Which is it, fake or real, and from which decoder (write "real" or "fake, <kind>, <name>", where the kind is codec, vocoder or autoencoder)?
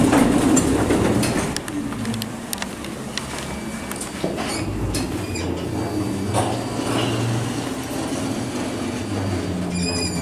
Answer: real